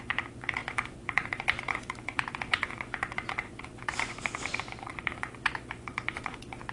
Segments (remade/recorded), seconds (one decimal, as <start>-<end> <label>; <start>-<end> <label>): 0.0-6.7 remade